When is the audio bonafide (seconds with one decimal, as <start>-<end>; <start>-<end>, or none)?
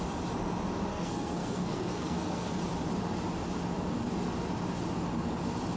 0.0-0.9; 2.6-5.8